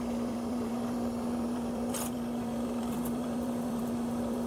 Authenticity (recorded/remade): remade